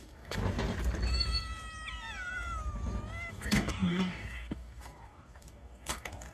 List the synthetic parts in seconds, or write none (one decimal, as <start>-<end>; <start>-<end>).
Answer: 0.0-0.4; 3.3-6.3